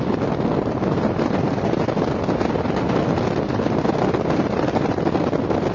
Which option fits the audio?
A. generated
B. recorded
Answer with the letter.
B